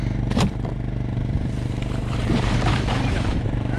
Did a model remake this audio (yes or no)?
yes